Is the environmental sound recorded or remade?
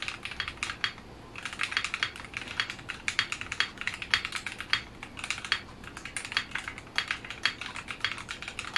recorded